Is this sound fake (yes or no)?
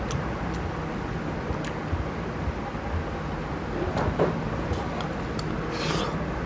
no